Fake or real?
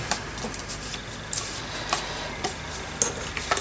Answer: real